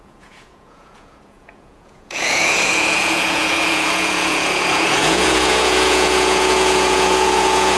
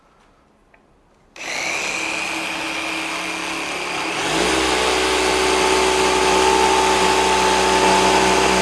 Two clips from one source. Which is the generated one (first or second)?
first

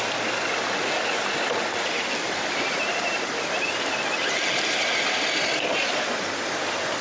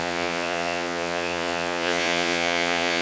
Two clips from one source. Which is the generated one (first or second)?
second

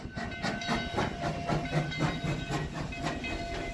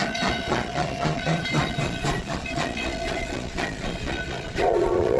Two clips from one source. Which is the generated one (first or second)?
second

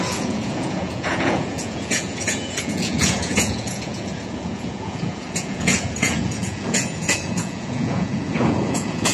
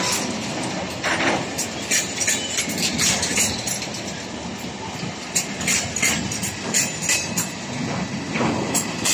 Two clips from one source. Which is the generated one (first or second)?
first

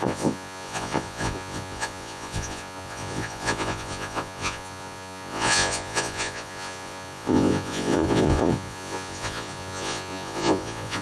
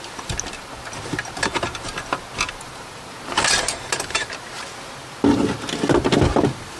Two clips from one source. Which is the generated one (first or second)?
first